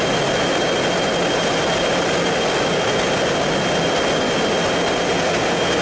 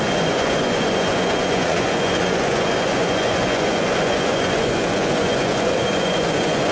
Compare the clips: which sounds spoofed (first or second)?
second